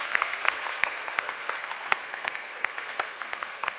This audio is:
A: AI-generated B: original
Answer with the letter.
A